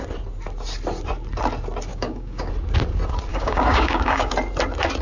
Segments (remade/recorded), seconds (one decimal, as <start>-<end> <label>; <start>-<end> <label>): 0.0-1.9 recorded; 1.9-2.5 remade; 2.5-3.3 recorded; 3.3-4.3 remade; 4.3-5.0 recorded